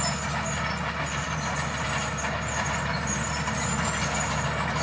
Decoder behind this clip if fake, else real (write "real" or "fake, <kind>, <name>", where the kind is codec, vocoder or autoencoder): real